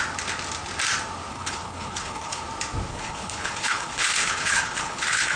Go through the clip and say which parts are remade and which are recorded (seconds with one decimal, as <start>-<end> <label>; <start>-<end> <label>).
0.0-1.3 recorded; 1.3-2.4 remade; 2.4-2.9 recorded; 2.9-5.4 remade